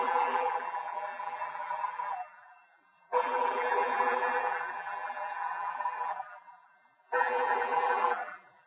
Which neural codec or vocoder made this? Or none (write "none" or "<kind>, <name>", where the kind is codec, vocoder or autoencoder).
vocoder, BigVGAN v2